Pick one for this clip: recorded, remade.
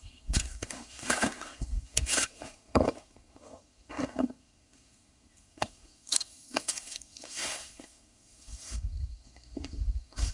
remade